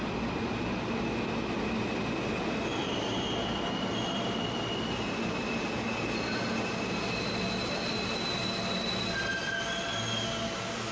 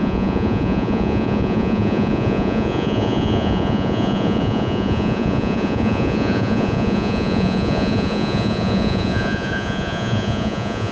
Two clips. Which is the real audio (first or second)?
first